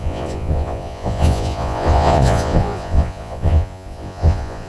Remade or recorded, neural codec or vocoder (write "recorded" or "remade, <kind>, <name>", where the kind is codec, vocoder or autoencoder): remade, vocoder, Vocos